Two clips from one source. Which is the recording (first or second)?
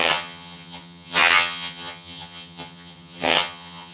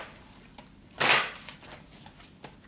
second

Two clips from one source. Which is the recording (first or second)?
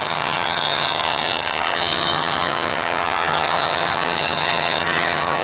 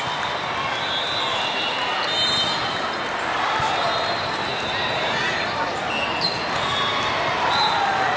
second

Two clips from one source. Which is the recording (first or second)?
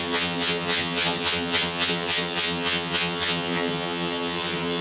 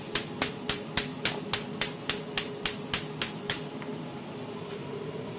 second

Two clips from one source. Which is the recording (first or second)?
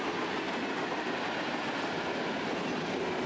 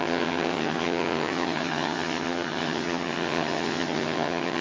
first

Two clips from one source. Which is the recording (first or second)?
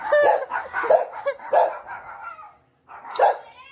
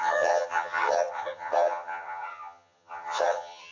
first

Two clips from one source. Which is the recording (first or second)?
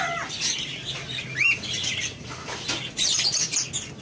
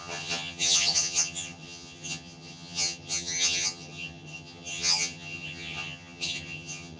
first